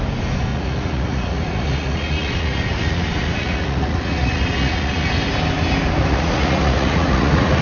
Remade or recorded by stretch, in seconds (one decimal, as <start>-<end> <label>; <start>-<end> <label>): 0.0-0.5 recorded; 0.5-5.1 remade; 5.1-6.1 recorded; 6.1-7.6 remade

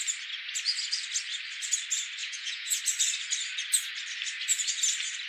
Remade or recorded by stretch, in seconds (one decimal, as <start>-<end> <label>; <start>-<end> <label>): 0.0-2.2 recorded; 2.2-2.8 remade; 2.8-5.3 recorded

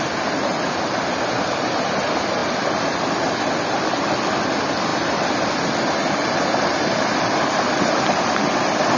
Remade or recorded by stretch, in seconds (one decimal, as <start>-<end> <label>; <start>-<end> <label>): 0.0-9.0 recorded